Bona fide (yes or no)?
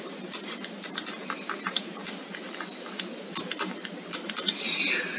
yes